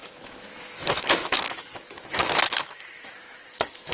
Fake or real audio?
fake